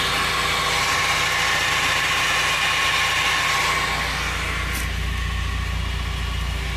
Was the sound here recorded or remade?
recorded